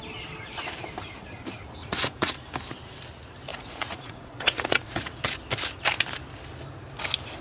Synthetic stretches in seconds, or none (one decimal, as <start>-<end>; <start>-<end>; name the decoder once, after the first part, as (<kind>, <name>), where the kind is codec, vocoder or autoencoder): 1.8-2.3 (vocoder, Vocos); 3.5-5.2